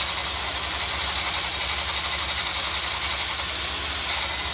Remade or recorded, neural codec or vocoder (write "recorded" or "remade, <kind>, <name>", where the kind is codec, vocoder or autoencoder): recorded